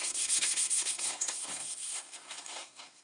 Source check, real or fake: fake